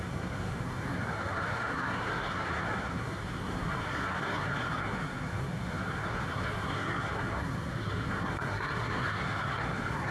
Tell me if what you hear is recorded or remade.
remade